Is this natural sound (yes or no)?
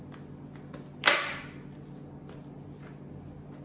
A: yes